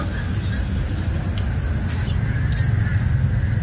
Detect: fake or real real